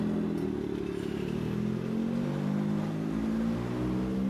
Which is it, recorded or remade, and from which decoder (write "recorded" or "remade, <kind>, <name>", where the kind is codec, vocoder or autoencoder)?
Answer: recorded